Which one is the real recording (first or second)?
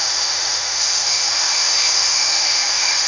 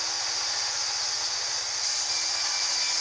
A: second